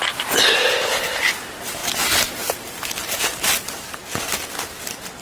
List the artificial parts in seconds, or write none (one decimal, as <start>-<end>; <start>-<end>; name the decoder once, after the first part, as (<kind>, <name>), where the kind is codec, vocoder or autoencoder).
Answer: none